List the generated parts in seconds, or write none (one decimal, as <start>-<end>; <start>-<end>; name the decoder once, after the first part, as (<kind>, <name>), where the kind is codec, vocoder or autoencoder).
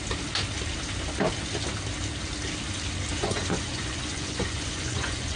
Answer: 3.1-5.4 (vocoder, Vocos)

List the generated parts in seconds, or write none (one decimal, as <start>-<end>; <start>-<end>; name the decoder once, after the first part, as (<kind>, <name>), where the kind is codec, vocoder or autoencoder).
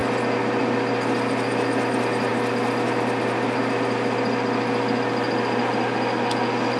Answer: none